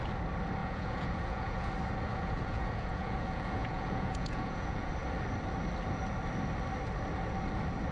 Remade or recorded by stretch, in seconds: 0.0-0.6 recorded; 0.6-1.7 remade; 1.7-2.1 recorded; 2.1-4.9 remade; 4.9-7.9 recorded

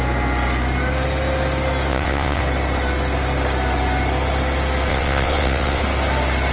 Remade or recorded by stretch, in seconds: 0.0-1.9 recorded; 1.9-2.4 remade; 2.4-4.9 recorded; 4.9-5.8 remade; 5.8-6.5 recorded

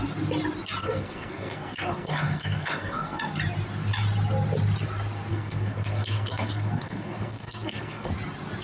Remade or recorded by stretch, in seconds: 0.0-0.8 recorded; 0.8-3.3 remade; 3.3-5.3 recorded; 5.3-8.1 remade; 8.1-8.6 recorded

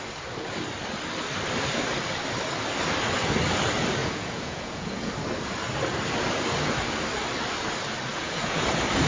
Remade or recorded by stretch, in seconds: 0.0-4.0 recorded; 4.0-5.1 remade; 5.1-8.1 recorded; 8.1-8.7 remade; 8.7-9.1 recorded